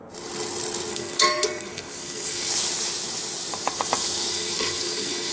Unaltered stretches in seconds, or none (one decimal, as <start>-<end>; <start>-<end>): 0.0-0.9; 2.5-4.3